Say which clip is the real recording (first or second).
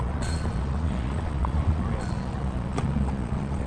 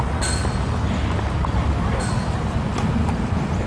second